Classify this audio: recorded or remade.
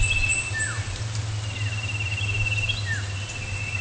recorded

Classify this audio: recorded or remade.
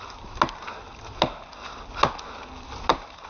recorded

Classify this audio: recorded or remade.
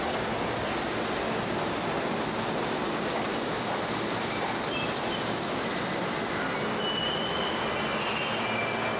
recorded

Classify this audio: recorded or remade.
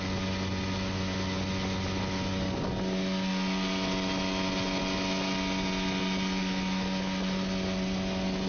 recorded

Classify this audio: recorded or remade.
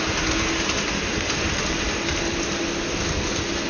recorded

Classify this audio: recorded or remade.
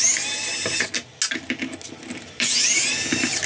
recorded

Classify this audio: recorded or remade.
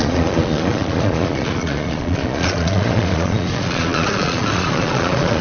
remade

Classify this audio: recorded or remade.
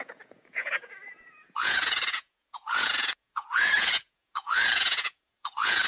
remade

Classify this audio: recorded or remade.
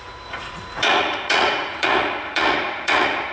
remade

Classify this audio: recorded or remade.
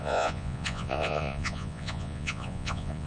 remade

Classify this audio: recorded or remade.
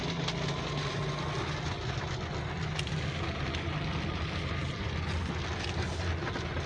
recorded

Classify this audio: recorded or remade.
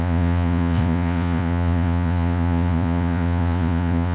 remade